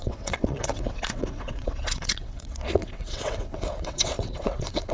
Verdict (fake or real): fake